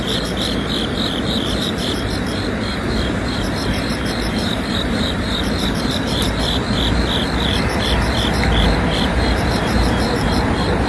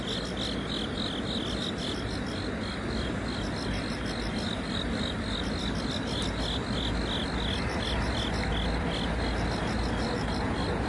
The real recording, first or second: second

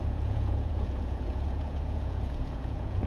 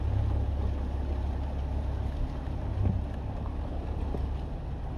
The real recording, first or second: second